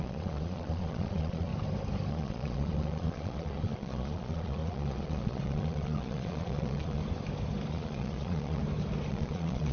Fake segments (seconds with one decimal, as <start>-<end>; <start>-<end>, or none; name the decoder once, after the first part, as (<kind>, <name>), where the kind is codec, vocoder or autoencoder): 0.0-1.5 (vocoder, Vocos); 2.1-7.0; 7.7-8.6; 9.1-9.7